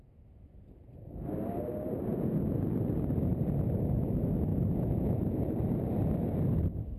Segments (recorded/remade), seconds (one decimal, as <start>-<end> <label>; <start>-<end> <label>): 0.0-2.1 recorded; 2.1-2.6 remade; 2.6-4.5 recorded; 4.5-5.5 remade; 5.5-7.0 recorded